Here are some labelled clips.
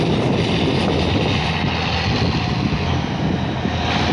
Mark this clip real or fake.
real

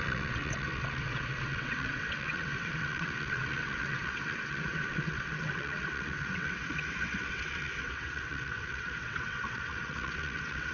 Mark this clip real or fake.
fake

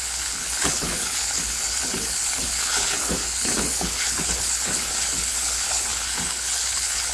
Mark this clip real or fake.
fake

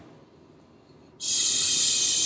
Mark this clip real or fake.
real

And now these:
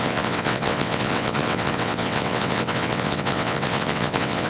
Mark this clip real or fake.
fake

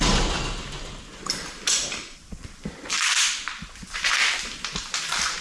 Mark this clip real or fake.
fake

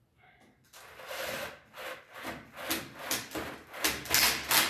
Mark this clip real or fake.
real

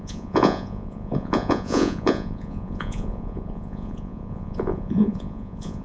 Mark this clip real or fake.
fake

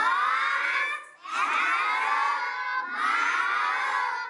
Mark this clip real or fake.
real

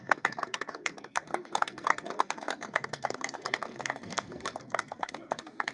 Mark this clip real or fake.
fake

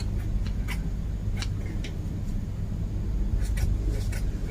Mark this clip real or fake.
real